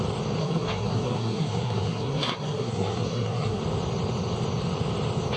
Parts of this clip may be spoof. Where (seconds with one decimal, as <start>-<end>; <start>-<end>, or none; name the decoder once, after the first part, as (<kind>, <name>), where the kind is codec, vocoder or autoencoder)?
0.4-3.6 (codec, SNAC)